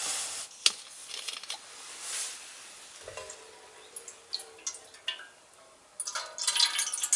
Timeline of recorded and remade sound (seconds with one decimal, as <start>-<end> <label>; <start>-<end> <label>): 0.0-7.2 recorded